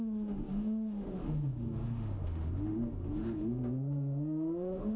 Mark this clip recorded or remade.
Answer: remade